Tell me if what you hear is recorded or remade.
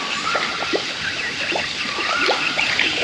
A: recorded